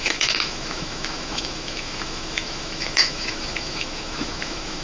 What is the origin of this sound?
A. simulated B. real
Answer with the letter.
A